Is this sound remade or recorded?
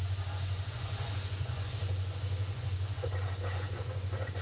remade